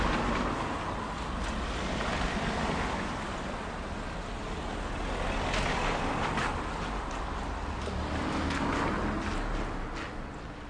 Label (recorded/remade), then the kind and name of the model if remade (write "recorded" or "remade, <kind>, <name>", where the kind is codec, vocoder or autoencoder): recorded